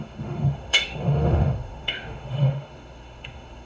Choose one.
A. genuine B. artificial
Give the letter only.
B